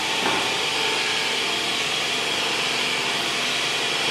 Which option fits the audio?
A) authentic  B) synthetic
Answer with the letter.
A